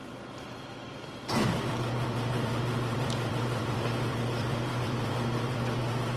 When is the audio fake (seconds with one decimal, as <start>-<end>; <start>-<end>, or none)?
1.0-6.2